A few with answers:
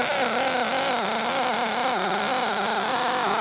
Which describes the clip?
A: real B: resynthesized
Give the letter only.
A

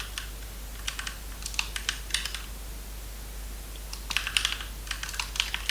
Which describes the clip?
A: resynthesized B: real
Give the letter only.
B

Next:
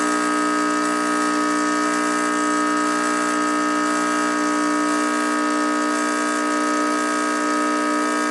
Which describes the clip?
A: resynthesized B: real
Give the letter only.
B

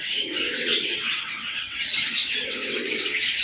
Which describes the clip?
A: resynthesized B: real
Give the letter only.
A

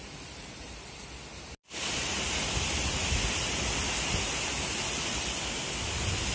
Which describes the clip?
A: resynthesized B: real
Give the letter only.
B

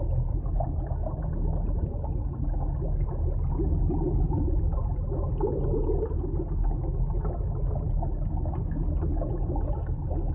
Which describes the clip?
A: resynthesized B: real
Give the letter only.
B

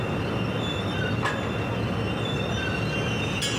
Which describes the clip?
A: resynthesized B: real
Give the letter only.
B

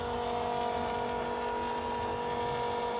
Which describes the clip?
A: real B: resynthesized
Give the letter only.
A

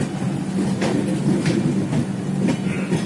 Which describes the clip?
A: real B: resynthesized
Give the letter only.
A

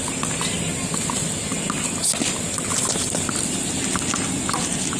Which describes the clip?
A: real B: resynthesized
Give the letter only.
A